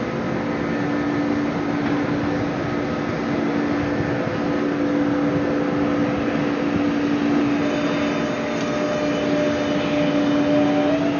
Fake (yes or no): no